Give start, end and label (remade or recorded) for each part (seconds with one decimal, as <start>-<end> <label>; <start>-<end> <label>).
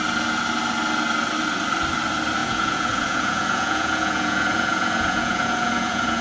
0.0-2.4 recorded; 2.4-6.2 remade